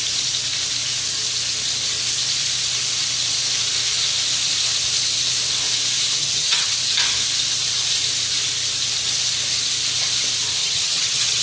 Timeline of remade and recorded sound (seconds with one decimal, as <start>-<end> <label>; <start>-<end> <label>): 0.0-6.2 recorded; 6.2-6.8 remade; 6.8-10.6 recorded; 10.6-11.4 remade